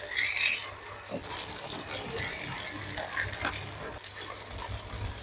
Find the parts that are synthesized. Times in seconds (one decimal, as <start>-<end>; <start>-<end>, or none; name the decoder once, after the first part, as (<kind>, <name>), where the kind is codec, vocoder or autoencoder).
none